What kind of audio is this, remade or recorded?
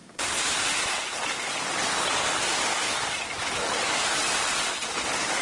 recorded